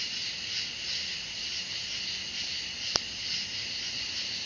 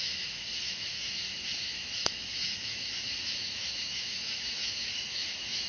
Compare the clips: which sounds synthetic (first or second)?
second